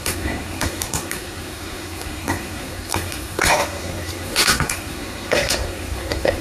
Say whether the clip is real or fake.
fake